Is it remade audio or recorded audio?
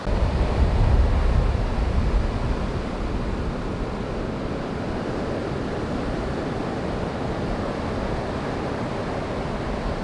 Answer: recorded